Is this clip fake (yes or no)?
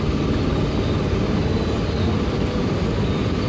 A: no